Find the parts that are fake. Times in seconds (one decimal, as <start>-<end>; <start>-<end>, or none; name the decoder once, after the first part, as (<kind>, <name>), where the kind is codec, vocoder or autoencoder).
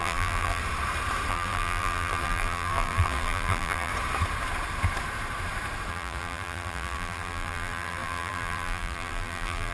0.0-0.6 (vocoder, BigVGAN v2); 1.3-3.9; 5.9-9.7